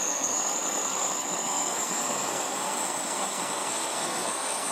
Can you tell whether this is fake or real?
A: fake